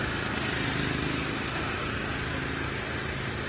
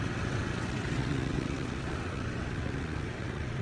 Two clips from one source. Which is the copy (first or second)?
second